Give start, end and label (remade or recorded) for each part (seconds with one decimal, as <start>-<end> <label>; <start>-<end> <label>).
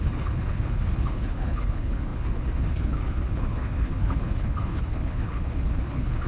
0.0-6.3 remade